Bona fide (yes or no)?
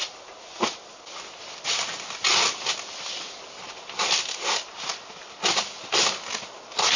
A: yes